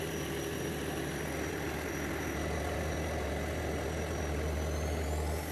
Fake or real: real